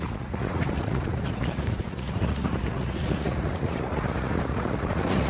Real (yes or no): no